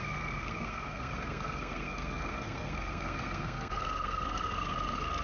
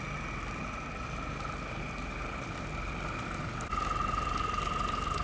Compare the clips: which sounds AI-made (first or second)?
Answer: first